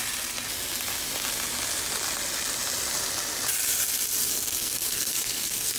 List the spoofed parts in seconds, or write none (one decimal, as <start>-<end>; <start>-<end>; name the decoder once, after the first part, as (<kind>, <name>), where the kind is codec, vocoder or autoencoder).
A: 4.2-5.8 (codec, SNAC)